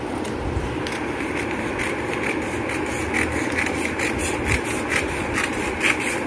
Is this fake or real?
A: real